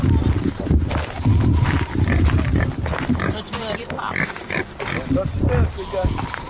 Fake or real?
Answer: real